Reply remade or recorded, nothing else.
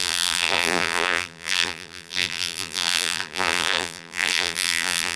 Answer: remade